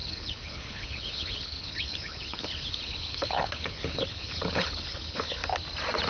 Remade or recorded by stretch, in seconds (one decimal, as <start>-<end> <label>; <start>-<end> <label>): 0.0-5.4 remade; 5.4-6.1 recorded